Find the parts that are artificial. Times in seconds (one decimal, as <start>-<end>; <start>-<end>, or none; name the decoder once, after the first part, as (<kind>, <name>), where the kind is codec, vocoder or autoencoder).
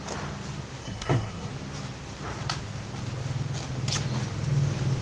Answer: 0.8-1.5 (codec, SNAC)